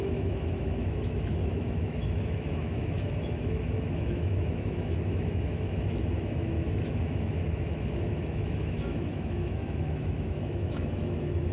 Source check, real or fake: fake